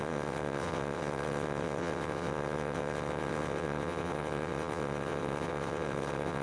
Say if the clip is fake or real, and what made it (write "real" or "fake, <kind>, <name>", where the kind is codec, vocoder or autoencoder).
fake, vocoder, WaveNeXt